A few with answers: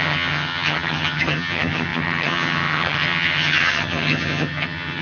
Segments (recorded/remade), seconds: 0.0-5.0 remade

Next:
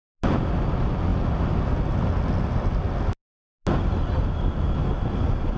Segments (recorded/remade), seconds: 0.0-5.6 recorded

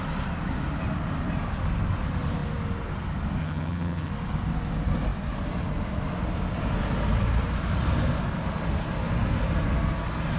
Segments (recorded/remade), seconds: 0.0-3.4 recorded; 3.4-4.1 remade; 4.1-10.4 recorded

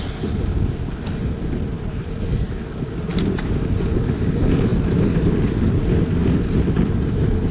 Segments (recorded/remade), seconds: 0.0-7.5 recorded

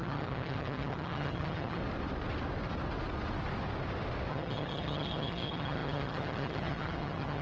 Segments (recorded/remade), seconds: 0.0-1.8 remade; 1.8-4.3 recorded; 4.3-7.4 remade

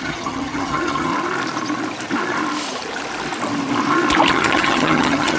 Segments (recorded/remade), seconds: 0.0-1.1 remade; 1.1-4.3 recorded; 4.3-5.4 remade